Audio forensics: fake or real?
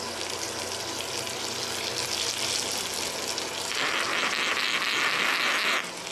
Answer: real